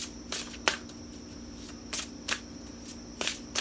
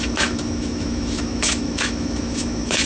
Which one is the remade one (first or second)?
second